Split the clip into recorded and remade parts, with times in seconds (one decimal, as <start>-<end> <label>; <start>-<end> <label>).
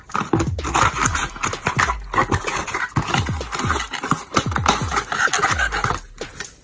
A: 0.0-6.6 recorded